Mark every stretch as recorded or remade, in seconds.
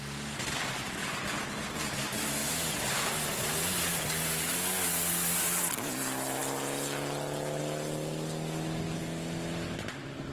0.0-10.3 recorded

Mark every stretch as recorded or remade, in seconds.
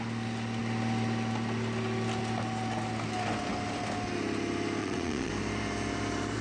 0.0-4.8 recorded; 4.8-5.3 remade; 5.3-6.4 recorded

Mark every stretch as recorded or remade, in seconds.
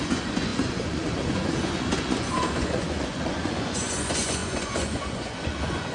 0.0-5.9 remade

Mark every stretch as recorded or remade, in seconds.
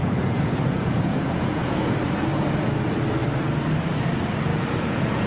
0.0-1.9 remade; 1.9-4.5 recorded; 4.5-5.3 remade